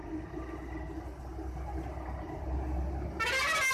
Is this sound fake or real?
real